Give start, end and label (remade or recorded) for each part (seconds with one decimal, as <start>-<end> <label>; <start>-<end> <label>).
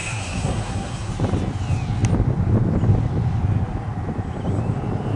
0.0-1.1 remade; 1.1-5.2 recorded